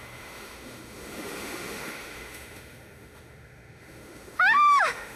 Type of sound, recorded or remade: remade